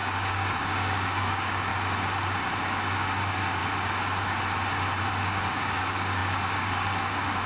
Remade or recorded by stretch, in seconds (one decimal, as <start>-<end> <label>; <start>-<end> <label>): 0.0-1.7 remade; 1.7-2.6 recorded; 2.6-3.6 remade; 3.6-5.1 recorded; 5.1-7.5 remade